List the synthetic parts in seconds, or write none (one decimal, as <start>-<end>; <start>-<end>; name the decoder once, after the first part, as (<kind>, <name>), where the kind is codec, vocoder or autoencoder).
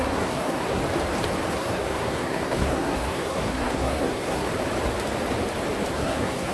0.0-0.8 (codec, SNAC); 1.5-4.5; 5.9-6.5